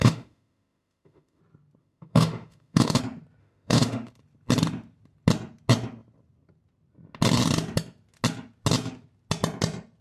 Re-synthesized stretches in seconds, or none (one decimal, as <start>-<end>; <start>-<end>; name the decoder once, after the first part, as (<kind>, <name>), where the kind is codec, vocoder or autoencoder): 0.0-1.4 (autoencoder, DAC-VAE); 1.8-3.0; 3.4-4.1

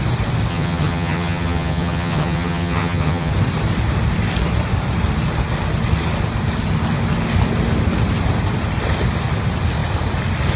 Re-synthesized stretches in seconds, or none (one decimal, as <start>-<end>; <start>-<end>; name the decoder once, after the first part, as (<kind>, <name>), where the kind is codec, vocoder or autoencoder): 0.5-3.3 (vocoder, HiFi-GAN)

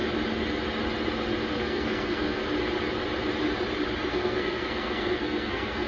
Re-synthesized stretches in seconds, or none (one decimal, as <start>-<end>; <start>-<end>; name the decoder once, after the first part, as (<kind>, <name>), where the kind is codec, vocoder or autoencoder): 1.5-2.4 (codec, SNAC); 4.1-5.9